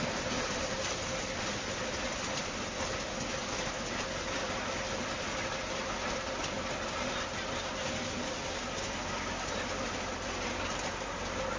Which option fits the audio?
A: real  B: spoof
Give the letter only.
A